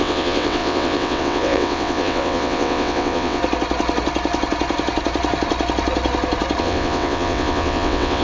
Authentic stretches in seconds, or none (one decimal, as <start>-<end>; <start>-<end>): 3.4-6.6